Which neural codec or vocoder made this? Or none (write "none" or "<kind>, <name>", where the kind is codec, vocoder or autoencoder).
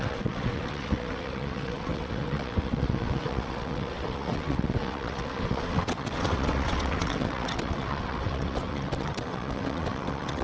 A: vocoder, WaveNeXt